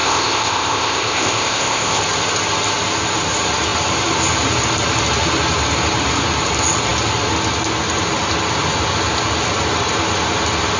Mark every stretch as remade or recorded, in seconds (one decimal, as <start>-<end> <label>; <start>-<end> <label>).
0.0-2.0 remade; 2.0-10.8 recorded